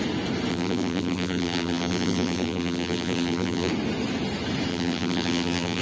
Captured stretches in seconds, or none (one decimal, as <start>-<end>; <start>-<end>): 0.0-0.5; 3.7-4.7

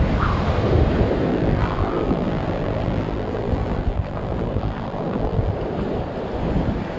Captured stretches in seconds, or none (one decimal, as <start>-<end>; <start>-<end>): 0.0-1.3; 5.5-7.0

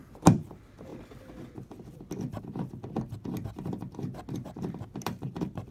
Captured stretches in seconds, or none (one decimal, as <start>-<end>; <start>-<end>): 0.9-4.3

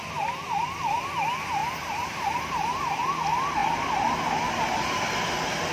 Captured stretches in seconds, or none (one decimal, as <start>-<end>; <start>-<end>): 0.0-1.6; 2.8-5.7

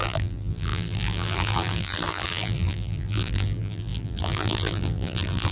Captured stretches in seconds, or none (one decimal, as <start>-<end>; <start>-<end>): none

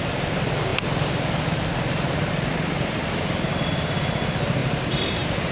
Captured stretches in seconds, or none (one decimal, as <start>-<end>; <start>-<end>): 0.0-4.6